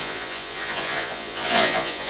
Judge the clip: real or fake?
fake